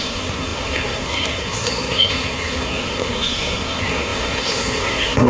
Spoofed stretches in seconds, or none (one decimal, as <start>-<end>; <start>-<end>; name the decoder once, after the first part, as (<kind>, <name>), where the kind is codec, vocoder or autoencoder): 0.0-5.3 (codec, SNAC)